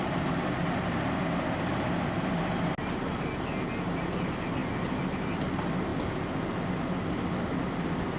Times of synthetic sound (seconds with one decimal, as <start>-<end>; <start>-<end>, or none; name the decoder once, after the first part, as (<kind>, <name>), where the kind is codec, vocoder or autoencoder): none